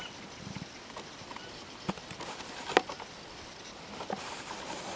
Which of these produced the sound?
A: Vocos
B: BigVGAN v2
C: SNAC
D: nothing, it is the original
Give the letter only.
B